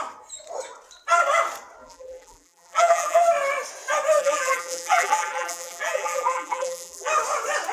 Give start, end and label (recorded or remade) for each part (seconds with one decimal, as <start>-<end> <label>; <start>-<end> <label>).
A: 0.0-1.8 recorded; 1.8-3.2 remade; 3.2-4.2 recorded; 4.2-7.1 remade; 7.1-7.7 recorded